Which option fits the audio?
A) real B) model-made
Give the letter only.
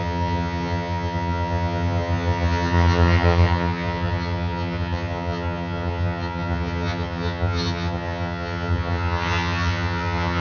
B